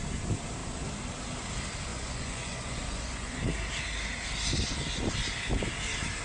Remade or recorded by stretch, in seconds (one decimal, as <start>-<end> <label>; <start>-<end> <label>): 0.0-1.9 recorded; 1.9-3.4 remade; 3.4-6.2 recorded